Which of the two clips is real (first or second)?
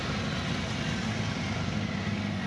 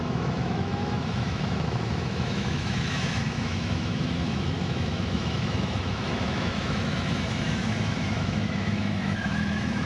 first